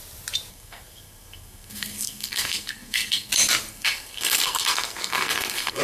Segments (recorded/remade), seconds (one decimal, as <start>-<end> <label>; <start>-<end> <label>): 0.0-0.5 recorded; 0.5-3.3 remade; 3.3-3.7 recorded; 3.7-5.8 remade